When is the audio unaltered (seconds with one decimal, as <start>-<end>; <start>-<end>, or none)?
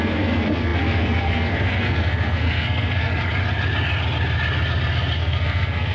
3.1-5.2